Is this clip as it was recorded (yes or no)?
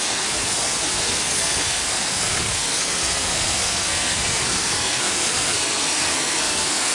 no